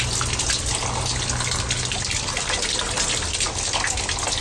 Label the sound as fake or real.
real